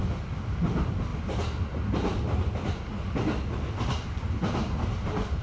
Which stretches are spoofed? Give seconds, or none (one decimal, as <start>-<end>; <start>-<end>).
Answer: 4.6-5.4